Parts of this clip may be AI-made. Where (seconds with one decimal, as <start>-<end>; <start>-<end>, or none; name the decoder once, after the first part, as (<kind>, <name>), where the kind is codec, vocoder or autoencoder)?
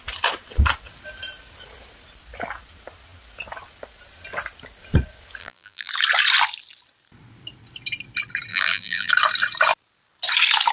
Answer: 5.4-5.9 (vocoder, BigVGAN v2); 8.5-9.1